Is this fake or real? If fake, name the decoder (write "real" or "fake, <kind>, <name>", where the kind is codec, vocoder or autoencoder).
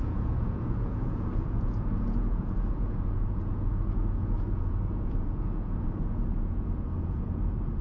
fake, vocoder, Vocos